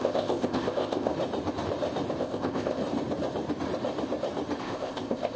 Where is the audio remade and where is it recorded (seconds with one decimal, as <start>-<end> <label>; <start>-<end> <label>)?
0.0-1.1 remade; 1.1-2.2 recorded; 2.2-2.8 remade; 2.8-4.6 recorded; 4.6-5.4 remade